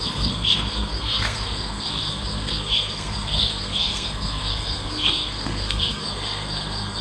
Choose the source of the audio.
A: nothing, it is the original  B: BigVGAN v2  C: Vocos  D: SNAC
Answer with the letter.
D